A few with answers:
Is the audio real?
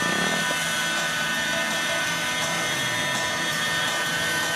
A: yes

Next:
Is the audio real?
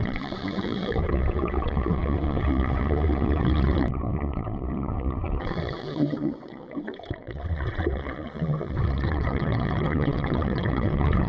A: no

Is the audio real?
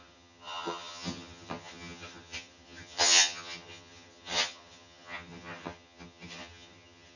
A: no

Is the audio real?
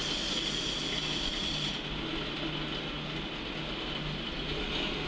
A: yes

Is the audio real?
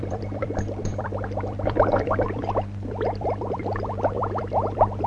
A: no